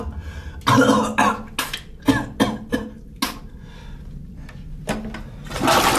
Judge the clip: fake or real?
real